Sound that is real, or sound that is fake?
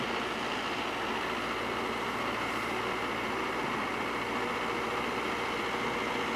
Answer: real